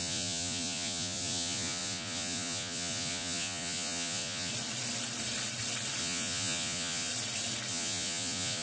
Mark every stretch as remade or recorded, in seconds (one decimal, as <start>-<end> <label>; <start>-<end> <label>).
0.0-4.5 remade; 4.5-6.0 recorded; 6.0-7.1 remade; 7.1-7.7 recorded; 7.7-8.6 remade